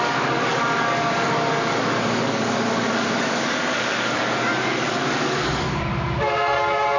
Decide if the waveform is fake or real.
fake